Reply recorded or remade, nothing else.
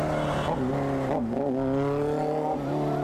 recorded